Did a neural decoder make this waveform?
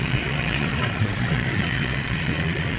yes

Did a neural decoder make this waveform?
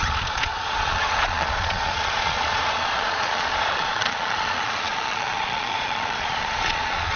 yes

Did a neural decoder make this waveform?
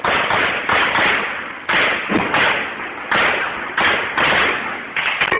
no